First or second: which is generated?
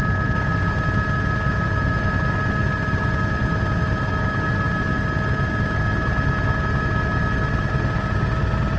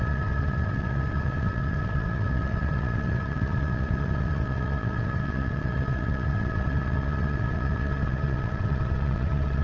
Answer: second